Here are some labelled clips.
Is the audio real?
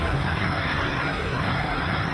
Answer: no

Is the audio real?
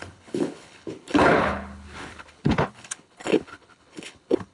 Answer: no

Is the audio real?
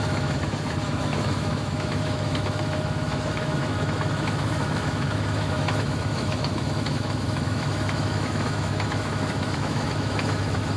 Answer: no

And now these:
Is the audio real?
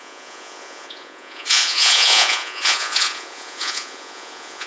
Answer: no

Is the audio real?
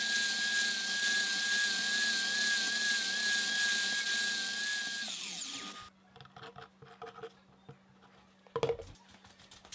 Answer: yes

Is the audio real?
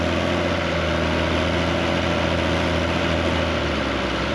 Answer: yes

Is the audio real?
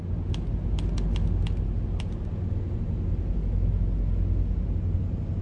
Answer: yes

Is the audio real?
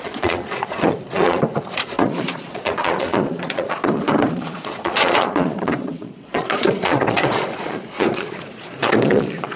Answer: no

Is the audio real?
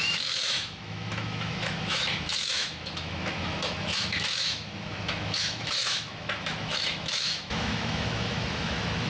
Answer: no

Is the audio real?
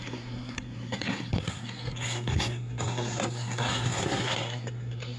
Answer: no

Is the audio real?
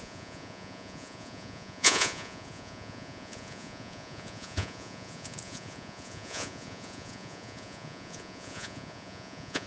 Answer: no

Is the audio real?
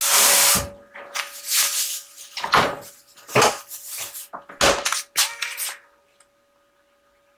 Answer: yes